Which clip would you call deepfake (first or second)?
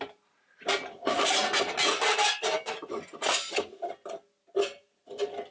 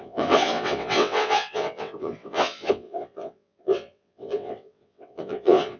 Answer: second